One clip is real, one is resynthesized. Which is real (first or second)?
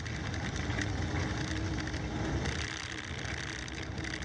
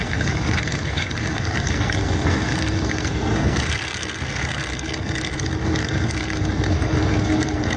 first